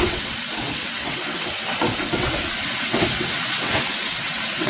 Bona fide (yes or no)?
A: no